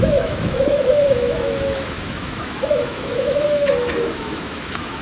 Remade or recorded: remade